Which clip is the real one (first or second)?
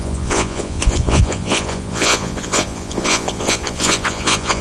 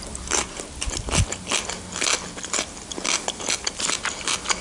second